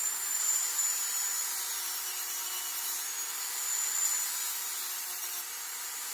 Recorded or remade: remade